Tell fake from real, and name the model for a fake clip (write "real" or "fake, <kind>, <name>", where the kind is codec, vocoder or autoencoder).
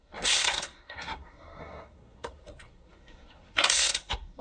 fake, codec, SNAC